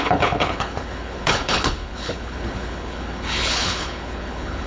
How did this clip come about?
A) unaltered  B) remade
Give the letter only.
B